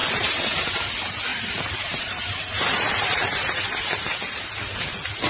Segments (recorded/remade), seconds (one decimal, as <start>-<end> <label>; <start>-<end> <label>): 0.0-0.7 remade; 0.7-1.3 recorded; 1.3-4.5 remade; 4.5-5.3 recorded